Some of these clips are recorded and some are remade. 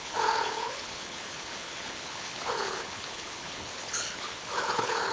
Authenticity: remade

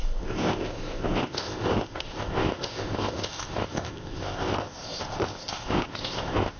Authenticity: remade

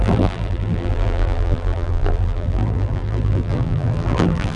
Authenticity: remade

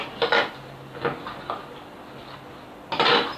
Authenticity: recorded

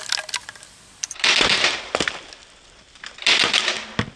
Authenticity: recorded